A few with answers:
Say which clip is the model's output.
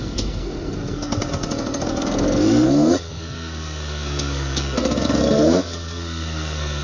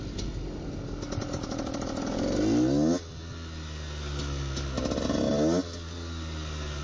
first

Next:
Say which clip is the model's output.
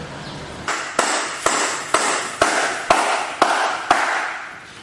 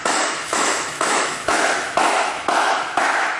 second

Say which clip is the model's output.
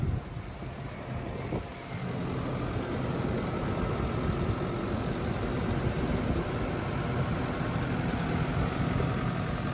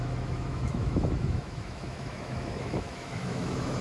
second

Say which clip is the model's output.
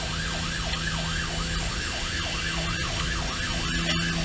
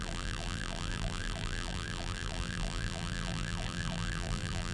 second